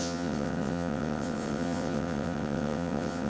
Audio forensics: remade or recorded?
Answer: remade